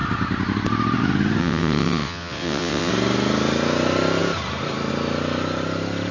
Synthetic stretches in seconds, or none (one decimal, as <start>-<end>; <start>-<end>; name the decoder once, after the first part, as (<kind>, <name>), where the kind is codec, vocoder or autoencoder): 1.4-2.9 (vocoder, WaveNeXt)